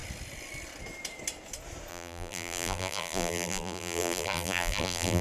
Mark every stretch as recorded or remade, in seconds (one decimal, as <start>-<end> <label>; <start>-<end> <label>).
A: 0.0-1.9 recorded; 1.9-5.2 remade

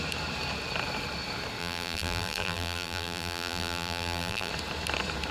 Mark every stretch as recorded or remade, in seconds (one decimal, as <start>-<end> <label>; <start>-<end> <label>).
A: 0.0-1.6 recorded; 1.6-4.5 remade; 4.5-5.3 recorded

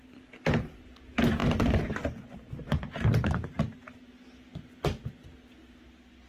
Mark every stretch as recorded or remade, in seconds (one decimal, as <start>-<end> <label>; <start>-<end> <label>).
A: 0.0-6.3 recorded

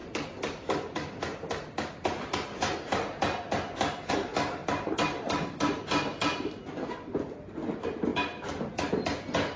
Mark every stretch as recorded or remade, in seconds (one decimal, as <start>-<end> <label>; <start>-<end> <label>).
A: 0.0-4.6 recorded; 4.6-7.4 remade; 7.4-9.6 recorded

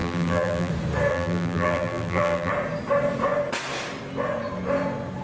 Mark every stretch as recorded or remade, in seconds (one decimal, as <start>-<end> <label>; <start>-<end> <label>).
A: 0.0-0.7 remade; 0.7-1.1 recorded; 1.1-2.5 remade; 2.5-5.2 recorded

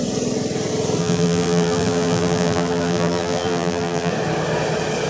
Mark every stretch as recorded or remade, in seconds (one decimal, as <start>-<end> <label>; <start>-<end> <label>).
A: 0.0-1.0 recorded; 1.0-4.1 remade; 4.1-5.1 recorded